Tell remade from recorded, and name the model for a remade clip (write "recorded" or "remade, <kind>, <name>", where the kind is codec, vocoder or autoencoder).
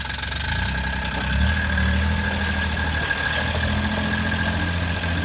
recorded